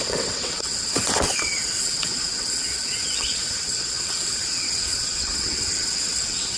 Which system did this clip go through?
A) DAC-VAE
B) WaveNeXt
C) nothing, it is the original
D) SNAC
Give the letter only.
B